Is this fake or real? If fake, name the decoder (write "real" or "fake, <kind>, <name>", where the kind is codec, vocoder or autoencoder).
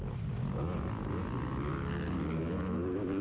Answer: real